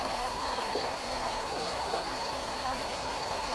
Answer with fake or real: fake